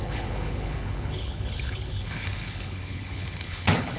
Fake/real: fake